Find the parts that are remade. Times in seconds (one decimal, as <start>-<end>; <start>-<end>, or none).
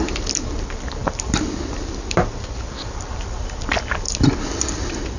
none